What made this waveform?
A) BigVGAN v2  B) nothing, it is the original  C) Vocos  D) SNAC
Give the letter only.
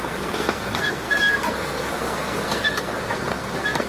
D